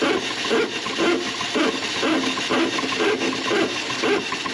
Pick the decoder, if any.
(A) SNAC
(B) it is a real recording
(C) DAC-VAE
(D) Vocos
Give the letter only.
B